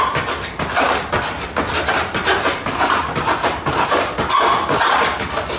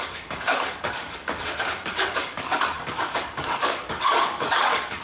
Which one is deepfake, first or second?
second